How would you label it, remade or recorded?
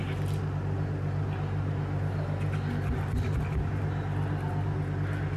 recorded